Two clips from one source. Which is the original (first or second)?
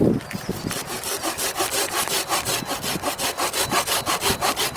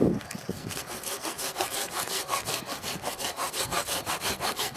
first